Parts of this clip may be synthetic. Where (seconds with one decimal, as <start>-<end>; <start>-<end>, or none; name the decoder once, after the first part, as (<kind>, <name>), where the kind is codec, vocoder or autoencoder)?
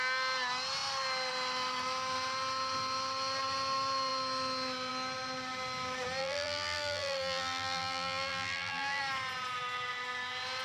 6.2-9.0 (vocoder, BigVGAN v2)